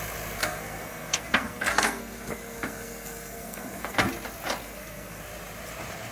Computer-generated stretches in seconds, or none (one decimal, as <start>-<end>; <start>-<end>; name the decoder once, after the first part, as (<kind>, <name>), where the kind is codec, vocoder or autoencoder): 0.4-4.1 (codec, SNAC); 4.6-5.2

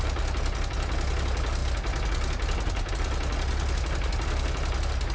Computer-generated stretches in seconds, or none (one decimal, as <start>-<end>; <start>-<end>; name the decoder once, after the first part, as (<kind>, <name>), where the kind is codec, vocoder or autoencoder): none

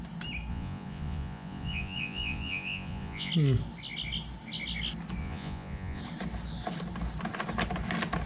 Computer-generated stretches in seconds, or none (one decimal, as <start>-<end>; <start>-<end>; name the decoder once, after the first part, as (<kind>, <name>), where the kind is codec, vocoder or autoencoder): 0.5-3.3 (vocoder, Vocos); 5.2-6.0

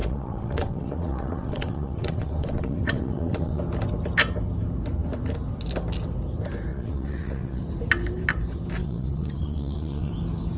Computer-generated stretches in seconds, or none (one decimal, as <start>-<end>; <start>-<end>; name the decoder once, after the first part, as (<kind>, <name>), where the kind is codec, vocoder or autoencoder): 0.0-3.6 (vocoder, WaveNeXt); 6.7-7.6; 8.8-10.1

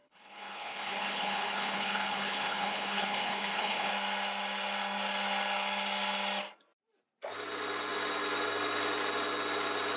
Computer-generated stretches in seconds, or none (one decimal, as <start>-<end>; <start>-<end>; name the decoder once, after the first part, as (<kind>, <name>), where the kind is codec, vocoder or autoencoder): 0.0-3.9 (codec, HILCodec)

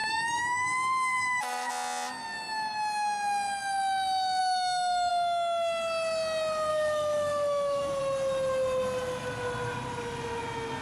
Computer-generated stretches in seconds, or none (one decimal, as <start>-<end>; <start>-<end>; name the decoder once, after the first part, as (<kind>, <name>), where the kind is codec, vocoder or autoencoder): 0.0-1.7 (autoencoder, DAC-VAE); 4.4-5.1; 6.7-8.0